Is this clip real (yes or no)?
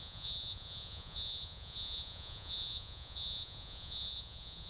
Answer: no